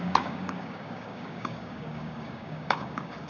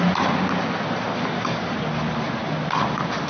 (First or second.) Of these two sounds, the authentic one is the second